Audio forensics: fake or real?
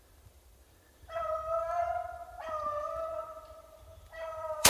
fake